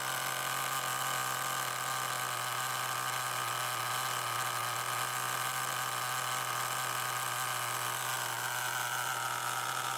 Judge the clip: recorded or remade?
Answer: recorded